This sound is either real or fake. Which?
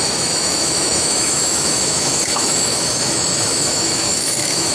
fake